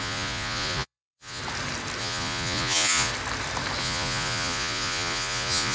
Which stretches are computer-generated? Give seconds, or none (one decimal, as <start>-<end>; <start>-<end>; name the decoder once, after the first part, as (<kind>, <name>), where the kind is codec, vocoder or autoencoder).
0.0-1.4 (vocoder, Vocos); 2.0-3.1; 3.8-5.7